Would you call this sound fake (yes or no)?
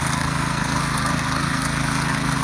yes